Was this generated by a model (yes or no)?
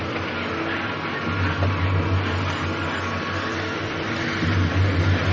no